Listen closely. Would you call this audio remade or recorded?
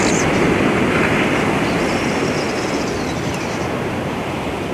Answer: recorded